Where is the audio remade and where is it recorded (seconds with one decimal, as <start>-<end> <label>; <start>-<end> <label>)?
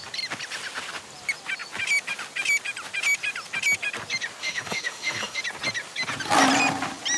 0.0-4.4 recorded; 4.4-5.4 remade; 5.4-7.2 recorded